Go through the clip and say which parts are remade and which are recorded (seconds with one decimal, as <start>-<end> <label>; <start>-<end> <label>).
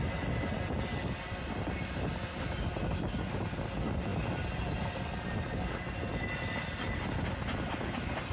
0.0-8.3 recorded